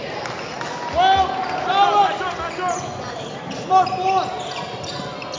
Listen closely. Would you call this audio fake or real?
real